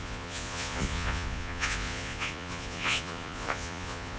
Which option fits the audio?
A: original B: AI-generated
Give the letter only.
B